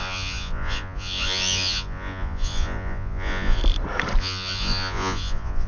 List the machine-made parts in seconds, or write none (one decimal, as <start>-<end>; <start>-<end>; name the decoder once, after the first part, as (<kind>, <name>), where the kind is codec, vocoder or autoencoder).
0.0-3.6 (vocoder, Vocos); 4.2-5.7